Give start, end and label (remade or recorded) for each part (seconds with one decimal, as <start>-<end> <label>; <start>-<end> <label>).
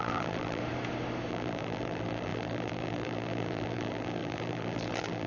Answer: 0.0-0.6 remade; 0.6-1.3 recorded; 1.3-5.3 remade